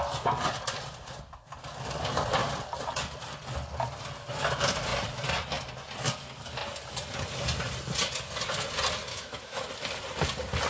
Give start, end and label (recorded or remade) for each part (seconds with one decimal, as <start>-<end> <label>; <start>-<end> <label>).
0.0-9.1 recorded; 9.1-9.7 remade; 9.7-10.7 recorded